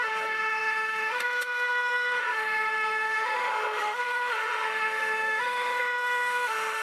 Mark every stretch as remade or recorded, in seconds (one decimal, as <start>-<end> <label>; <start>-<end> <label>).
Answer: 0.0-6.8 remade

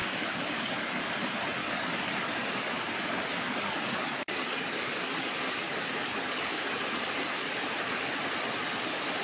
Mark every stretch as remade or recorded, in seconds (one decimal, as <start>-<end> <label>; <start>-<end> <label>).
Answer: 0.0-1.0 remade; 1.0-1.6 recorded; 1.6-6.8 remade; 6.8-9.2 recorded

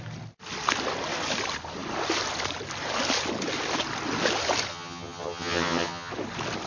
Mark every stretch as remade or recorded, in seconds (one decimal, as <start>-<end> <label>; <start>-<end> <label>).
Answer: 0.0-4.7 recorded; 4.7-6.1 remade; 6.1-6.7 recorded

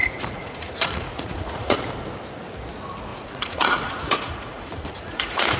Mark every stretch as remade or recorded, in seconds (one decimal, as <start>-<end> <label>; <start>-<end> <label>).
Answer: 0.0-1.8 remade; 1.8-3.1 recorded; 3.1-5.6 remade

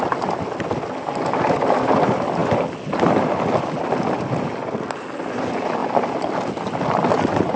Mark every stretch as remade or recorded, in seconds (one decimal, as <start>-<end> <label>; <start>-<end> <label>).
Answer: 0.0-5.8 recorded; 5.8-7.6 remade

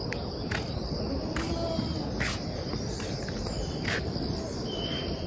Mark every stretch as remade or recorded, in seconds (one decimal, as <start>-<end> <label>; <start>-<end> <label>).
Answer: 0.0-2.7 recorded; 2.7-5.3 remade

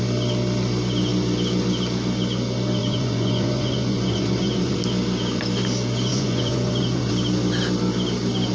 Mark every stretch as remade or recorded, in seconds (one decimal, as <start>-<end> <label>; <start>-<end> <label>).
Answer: 0.0-2.8 recorded; 2.8-4.8 remade; 4.8-6.1 recorded; 6.1-7.1 remade; 7.1-8.5 recorded